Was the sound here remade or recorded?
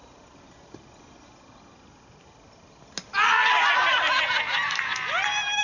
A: recorded